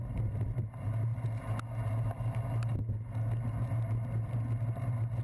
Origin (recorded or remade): recorded